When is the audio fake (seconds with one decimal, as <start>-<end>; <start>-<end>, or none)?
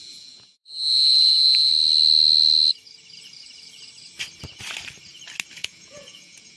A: 0.0-1.7; 5.5-6.6